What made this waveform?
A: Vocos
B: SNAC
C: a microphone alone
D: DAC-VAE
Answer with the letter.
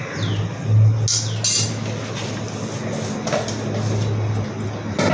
C